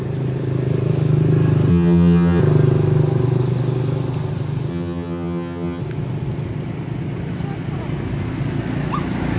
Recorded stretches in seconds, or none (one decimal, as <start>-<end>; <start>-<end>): 0.0-1.7; 2.4-4.7; 5.8-9.4